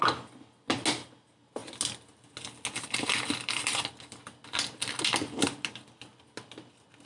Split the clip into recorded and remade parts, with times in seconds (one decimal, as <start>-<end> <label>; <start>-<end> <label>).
0.0-7.1 recorded